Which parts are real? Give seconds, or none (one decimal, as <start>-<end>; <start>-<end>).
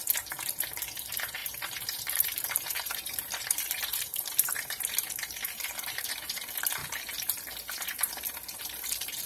6.8-7.7